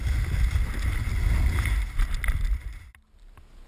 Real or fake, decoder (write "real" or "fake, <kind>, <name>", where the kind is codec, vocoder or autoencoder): real